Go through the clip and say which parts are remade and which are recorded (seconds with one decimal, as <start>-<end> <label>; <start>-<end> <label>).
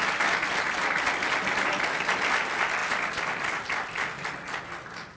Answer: 0.0-5.2 recorded